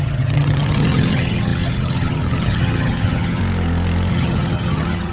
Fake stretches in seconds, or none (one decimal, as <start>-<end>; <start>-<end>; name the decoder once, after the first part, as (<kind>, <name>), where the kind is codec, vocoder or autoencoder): 0.0-3.4 (vocoder, HiFi-GAN); 4.1-5.1